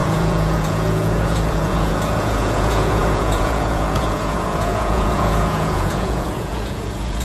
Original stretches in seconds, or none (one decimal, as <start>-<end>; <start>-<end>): none